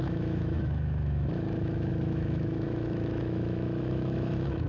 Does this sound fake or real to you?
fake